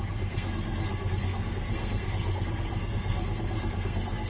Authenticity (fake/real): fake